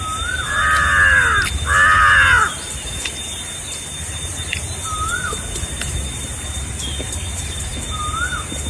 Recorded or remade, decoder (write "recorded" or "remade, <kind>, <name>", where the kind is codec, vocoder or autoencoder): recorded